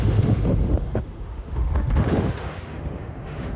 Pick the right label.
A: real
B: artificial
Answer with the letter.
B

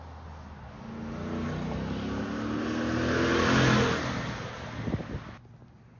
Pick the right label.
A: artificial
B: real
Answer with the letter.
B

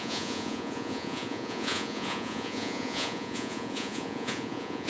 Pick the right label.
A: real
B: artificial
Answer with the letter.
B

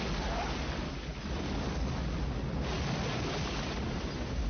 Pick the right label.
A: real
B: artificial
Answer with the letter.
A